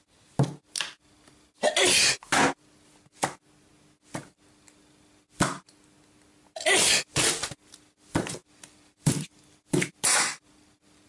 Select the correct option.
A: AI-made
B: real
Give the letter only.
B